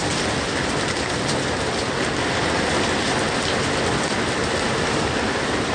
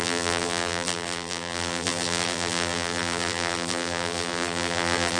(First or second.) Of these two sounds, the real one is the first